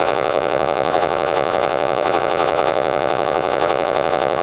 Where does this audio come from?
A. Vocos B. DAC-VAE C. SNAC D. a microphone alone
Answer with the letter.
A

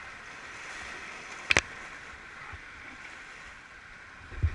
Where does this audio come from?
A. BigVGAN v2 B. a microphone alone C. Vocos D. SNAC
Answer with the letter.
B